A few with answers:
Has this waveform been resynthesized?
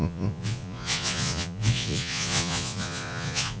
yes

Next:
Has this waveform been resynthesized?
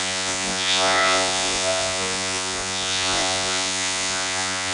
yes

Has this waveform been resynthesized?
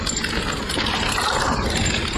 no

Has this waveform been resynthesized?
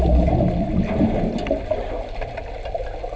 no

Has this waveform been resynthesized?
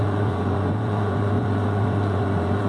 yes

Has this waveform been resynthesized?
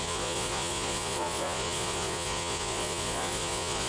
yes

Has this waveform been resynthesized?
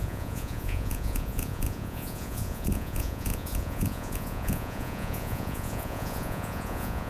yes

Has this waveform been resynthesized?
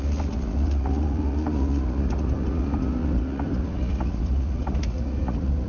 yes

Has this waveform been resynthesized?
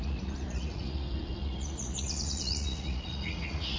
yes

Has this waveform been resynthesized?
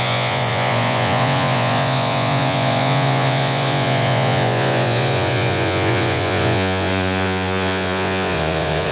yes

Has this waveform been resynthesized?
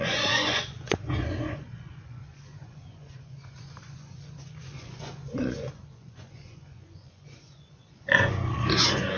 yes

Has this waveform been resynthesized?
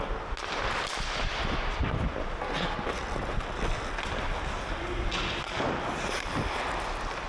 no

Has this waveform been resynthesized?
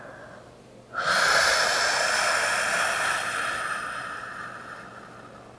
no